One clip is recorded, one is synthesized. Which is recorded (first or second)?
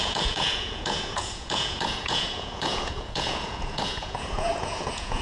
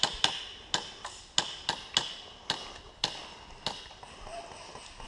second